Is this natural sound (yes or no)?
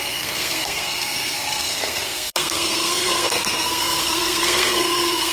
no